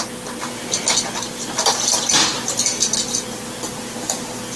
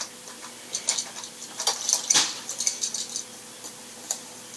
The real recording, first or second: first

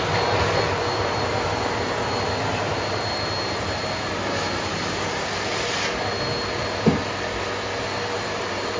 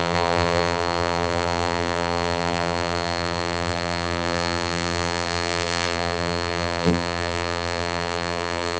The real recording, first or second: first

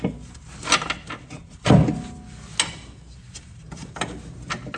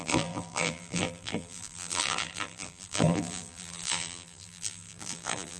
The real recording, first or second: first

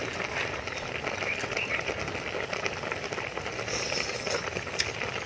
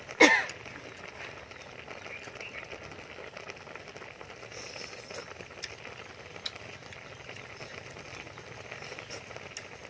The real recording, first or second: second